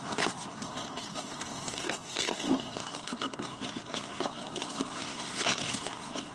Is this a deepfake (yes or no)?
yes